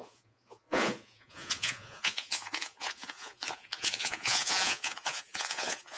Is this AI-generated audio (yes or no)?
yes